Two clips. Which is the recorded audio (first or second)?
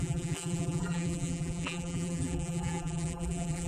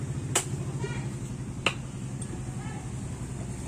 second